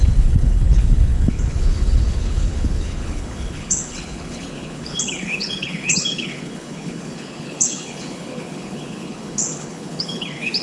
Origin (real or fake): fake